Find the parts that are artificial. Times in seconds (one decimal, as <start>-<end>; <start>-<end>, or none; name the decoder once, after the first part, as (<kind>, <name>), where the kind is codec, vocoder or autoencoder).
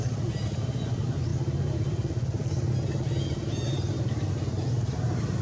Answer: none